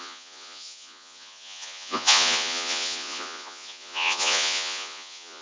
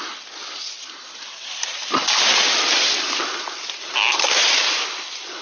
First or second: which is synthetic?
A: first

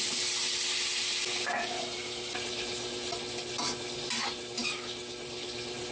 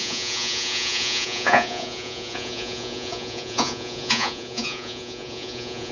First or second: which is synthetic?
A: second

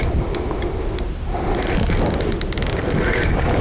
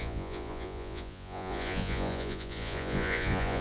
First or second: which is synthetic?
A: second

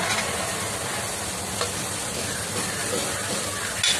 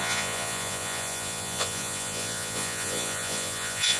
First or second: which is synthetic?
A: second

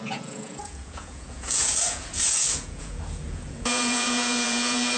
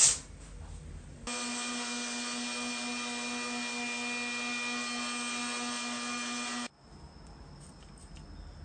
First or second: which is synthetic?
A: first